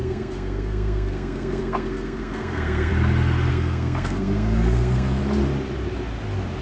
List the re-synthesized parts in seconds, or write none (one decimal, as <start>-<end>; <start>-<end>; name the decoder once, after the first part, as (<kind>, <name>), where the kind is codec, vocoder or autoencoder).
0.0-2.9 (codec, SNAC); 3.5-5.2